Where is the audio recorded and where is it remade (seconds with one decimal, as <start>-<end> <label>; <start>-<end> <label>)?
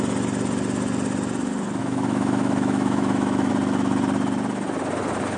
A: 0.0-1.8 recorded; 1.8-3.5 remade; 3.5-5.4 recorded